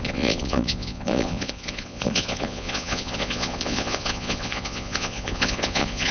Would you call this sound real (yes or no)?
no